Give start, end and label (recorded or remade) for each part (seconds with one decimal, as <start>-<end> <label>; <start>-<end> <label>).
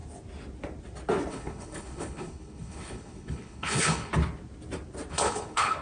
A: 0.0-1.3 recorded; 1.3-4.1 remade; 4.1-5.1 recorded; 5.1-5.8 remade